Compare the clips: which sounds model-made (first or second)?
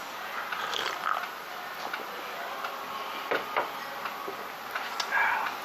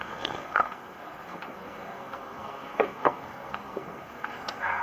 second